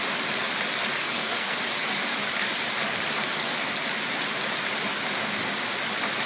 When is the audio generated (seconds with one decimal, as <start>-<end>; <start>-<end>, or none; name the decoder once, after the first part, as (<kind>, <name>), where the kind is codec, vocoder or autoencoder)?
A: 1.0-1.6 (codec, SNAC)